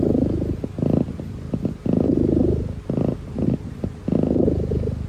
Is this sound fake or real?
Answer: real